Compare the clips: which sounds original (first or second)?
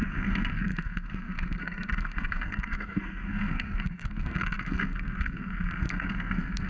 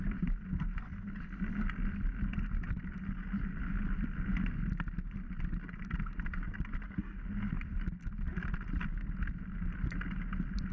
second